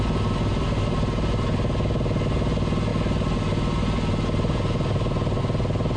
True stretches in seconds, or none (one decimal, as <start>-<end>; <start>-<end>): 0.0-6.0